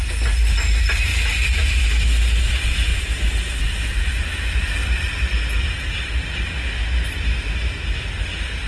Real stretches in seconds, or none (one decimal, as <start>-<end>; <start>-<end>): 0.0-8.7